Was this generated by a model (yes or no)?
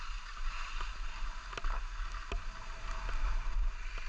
no